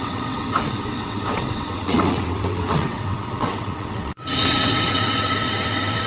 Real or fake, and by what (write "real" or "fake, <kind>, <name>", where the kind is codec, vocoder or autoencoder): fake, vocoder, WaveNeXt